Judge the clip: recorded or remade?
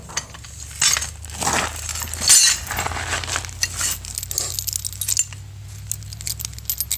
recorded